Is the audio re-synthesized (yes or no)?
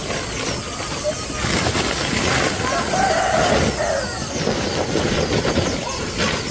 no